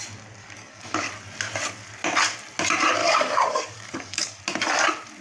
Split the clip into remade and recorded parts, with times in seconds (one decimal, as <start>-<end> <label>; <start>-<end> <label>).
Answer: 0.0-0.4 recorded; 0.4-1.1 remade; 1.1-3.0 recorded; 3.0-4.4 remade; 4.4-5.2 recorded